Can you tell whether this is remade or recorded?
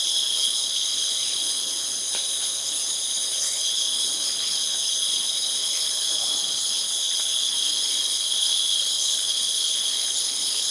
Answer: remade